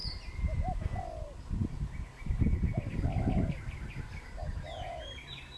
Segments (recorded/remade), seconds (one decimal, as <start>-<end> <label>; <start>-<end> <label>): 0.0-5.6 recorded